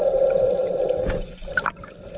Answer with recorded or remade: recorded